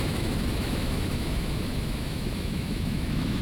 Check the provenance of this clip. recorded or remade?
remade